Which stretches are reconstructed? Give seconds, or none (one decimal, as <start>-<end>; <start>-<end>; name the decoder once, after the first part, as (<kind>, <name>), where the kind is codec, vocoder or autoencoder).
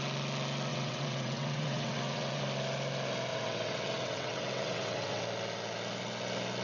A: 0.7-2.4 (vocoder, WaveNeXt); 3.3-5.2